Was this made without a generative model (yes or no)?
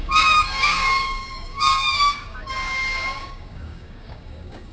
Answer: no